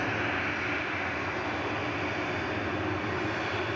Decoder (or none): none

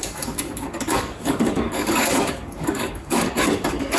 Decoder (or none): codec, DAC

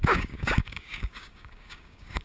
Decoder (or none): codec, DAC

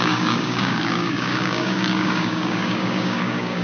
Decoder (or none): codec, DAC